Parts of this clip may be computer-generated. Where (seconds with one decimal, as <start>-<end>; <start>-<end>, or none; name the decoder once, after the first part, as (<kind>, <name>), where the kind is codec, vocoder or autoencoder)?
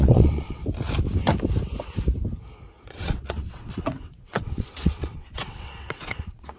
0.0-0.6 (vocoder, WaveNeXt); 2.8-6.6